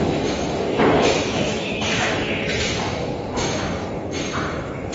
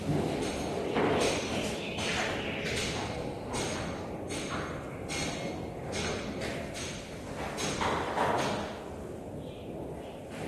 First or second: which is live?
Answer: second